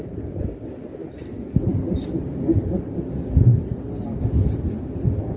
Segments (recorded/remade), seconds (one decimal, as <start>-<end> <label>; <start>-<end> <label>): 0.0-5.4 recorded